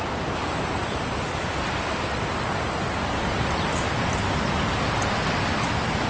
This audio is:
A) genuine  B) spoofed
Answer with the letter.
A